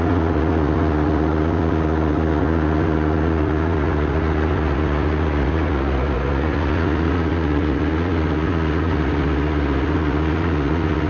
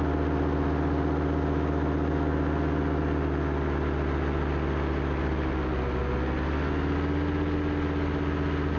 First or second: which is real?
second